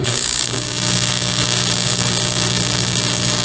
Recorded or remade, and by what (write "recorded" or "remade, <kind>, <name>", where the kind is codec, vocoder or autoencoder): remade, codec, DAC